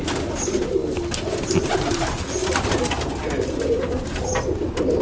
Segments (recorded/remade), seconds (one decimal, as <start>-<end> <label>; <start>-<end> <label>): 0.0-5.0 recorded